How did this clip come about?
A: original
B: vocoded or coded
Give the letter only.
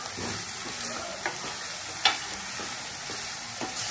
A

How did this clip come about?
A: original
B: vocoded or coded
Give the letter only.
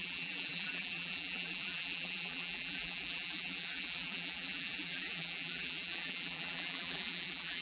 B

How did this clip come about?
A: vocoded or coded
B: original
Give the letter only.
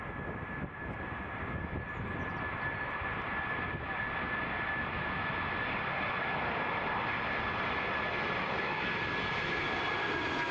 B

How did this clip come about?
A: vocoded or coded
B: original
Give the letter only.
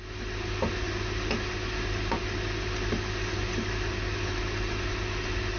B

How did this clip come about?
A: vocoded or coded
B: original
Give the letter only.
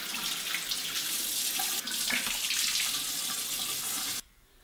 B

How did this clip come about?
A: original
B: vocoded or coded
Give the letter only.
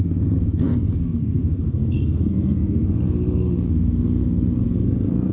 B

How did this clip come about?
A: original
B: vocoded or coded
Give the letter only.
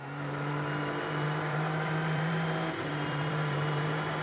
B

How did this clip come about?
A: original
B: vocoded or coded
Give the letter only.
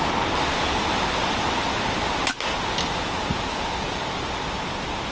A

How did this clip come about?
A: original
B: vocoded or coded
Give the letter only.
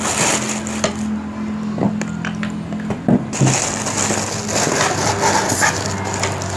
A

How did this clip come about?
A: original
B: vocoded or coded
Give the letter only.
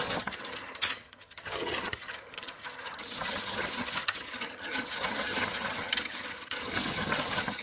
B